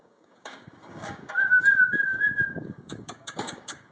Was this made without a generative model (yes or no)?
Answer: no